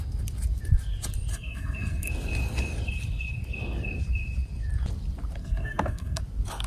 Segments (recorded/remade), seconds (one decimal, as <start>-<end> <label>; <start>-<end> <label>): 0.0-1.3 recorded; 1.3-2.1 remade; 2.1-5.4 recorded; 5.4-6.2 remade; 6.2-6.7 recorded